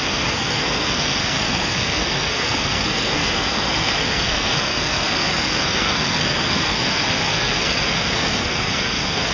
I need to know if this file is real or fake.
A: fake